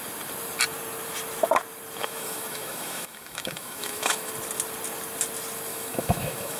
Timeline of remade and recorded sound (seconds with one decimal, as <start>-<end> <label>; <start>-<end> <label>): 0.0-2.0 recorded; 2.0-4.3 remade; 4.3-5.7 recorded; 5.7-6.6 remade